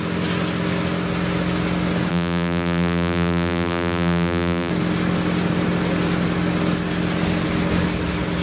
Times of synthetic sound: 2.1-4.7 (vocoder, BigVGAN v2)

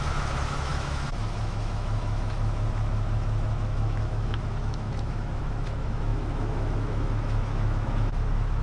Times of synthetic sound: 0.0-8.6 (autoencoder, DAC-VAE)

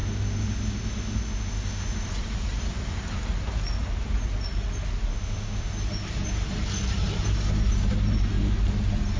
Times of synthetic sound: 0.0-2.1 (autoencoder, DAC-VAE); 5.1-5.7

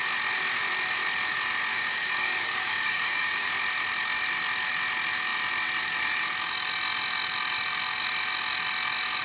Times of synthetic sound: 1.7-3.5 (codec, DAC)

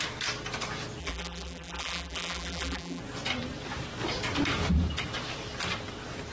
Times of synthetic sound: 1.0-3.0 (vocoder, BigVGAN v2)

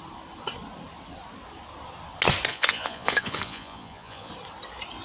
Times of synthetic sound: 2.5-4.3 (vocoder, Vocos)

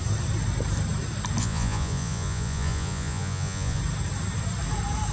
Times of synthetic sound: 1.4-3.8 (vocoder, Vocos)

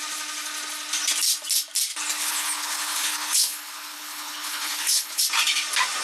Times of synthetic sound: 2.2-5.2 (codec, HILCodec)